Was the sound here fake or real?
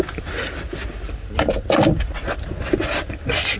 real